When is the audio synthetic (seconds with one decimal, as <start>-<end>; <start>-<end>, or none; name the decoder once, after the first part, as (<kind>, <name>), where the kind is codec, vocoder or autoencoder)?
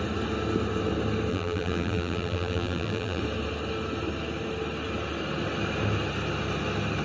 1.3-3.2 (vocoder, BigVGAN v2)